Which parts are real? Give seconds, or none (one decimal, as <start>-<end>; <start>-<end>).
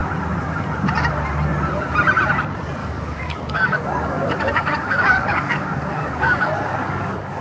0.0-2.8